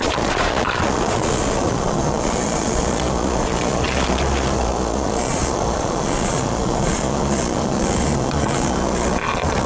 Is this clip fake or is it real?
fake